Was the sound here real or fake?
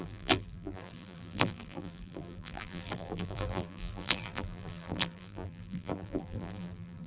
fake